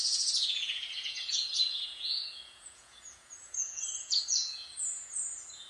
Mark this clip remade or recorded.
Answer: remade